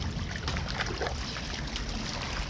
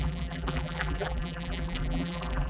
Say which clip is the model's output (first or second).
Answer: second